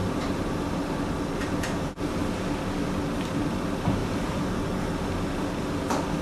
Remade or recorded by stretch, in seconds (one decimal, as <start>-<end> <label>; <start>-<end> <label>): 0.0-0.9 remade; 0.9-1.4 recorded; 1.4-2.0 remade; 2.0-4.0 recorded; 4.0-4.6 remade; 4.6-6.2 recorded